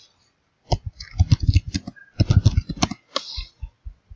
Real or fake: real